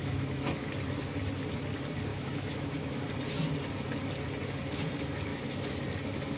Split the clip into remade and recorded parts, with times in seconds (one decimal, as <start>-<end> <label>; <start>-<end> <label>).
0.0-0.7 remade; 0.7-2.1 recorded; 2.1-3.0 remade; 3.0-5.3 recorded; 5.3-5.8 remade; 5.8-6.4 recorded